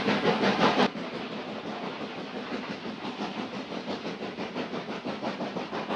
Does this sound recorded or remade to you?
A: recorded